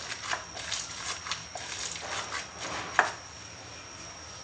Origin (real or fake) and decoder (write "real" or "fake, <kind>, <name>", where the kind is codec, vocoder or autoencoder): real